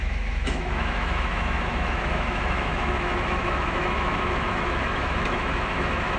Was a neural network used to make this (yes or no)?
yes